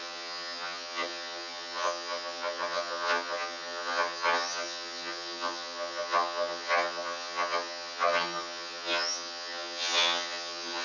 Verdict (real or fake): fake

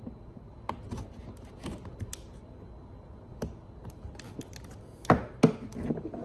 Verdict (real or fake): real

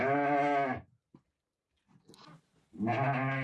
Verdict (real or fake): real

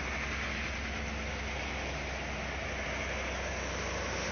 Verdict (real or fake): real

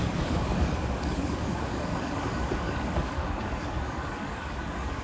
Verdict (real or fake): fake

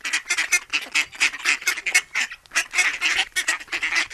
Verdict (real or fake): real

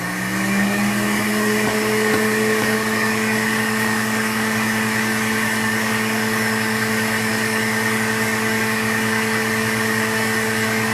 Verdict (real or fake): fake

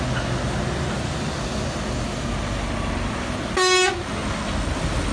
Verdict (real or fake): real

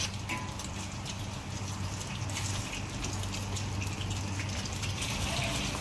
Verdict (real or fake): real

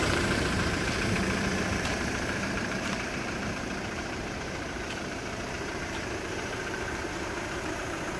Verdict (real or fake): fake